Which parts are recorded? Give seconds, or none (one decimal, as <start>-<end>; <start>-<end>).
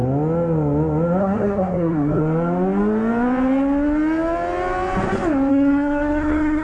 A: 0.0-1.2; 2.2-5.5